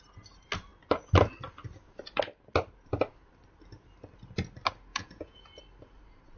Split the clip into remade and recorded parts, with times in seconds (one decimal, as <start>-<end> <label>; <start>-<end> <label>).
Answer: 0.0-4.9 recorded; 4.9-5.6 remade; 5.6-6.4 recorded